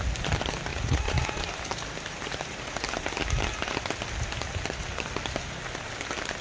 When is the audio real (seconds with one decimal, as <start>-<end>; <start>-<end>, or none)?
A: 0.0-0.7; 1.4-6.4